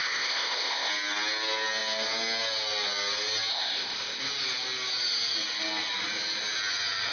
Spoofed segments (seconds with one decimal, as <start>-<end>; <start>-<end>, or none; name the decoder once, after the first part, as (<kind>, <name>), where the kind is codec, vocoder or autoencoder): 0.0-0.9 (codec, ZipCodec); 3.5-4.2